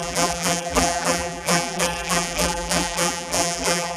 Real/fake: fake